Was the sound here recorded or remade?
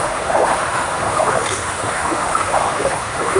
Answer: remade